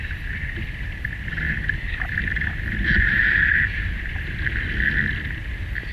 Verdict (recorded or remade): recorded